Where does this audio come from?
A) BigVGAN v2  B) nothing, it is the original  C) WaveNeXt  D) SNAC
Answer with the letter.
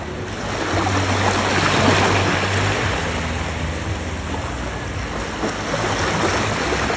B